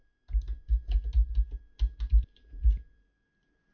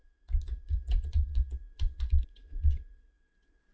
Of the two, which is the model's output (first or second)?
second